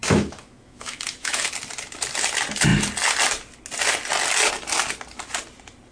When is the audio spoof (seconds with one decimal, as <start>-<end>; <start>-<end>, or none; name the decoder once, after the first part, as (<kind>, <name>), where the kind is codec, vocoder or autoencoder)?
0.0-1.5 (autoencoder, DAC-VAE)